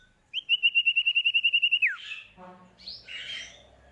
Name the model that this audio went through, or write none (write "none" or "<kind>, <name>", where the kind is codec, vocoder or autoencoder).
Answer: none